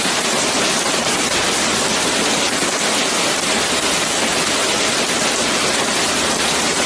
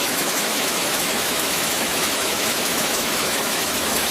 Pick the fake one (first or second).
second